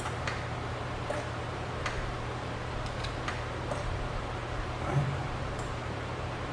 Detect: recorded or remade remade